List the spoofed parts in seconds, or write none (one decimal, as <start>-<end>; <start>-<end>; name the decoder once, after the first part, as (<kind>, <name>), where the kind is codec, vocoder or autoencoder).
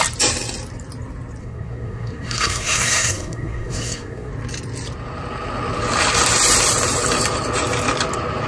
1.4-4.3 (codec, SNAC)